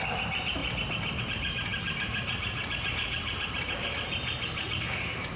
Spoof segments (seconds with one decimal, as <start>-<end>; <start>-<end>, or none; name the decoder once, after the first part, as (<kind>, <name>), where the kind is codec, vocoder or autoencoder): 0.0-5.4 (vocoder, BigVGAN v2)